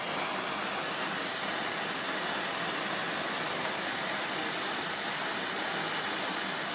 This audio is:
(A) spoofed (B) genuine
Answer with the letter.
B